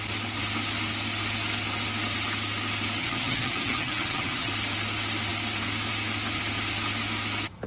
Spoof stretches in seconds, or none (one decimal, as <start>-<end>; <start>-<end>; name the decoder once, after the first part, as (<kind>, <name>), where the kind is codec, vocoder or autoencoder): 3.0-4.5 (vocoder, HiFi-GAN)